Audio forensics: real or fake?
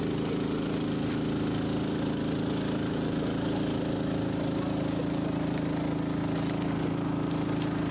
real